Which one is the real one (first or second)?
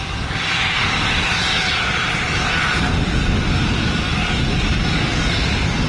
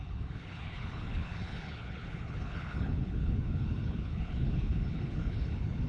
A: first